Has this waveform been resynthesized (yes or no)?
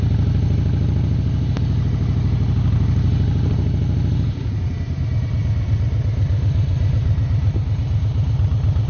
no